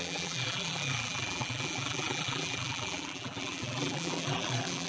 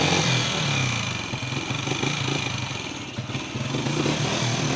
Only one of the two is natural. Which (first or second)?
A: second